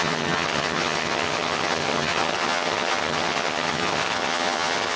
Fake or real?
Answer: fake